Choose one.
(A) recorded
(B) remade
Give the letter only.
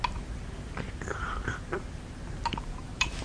A